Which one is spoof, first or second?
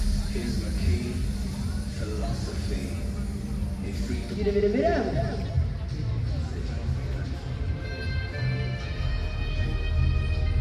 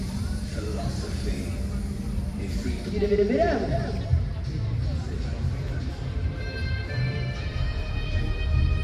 second